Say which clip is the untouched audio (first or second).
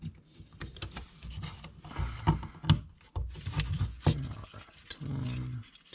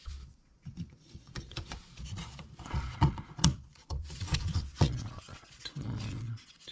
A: first